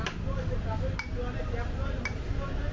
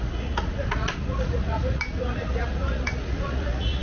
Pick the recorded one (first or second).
first